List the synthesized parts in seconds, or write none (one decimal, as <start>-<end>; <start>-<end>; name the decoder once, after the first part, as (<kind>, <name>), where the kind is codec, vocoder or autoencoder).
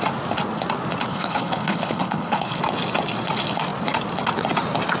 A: 1.1-2.6 (codec, HILCodec)